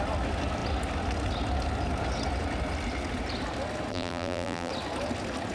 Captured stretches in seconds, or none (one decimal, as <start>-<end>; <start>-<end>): 0.0-3.9; 4.7-5.5